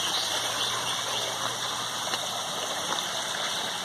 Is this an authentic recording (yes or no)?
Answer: yes